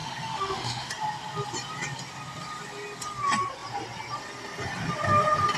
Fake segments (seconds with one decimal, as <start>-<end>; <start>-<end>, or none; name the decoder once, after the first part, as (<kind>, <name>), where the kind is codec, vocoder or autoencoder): 0.0-0.9 (autoencoder, DAC-VAE)